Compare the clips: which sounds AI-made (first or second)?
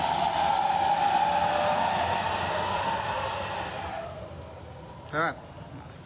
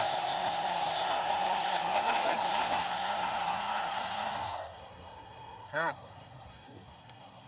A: second